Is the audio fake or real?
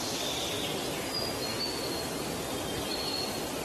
real